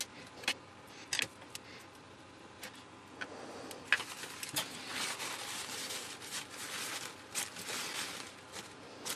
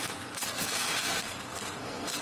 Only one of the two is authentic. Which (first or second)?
first